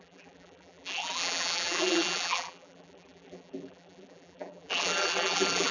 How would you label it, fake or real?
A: fake